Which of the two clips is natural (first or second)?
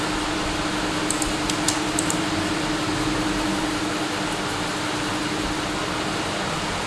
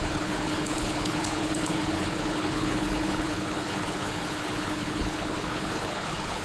first